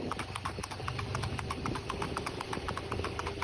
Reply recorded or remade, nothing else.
recorded